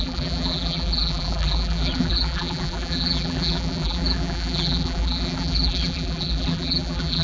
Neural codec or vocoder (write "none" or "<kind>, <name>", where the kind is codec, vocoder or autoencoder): vocoder, BigVGAN v2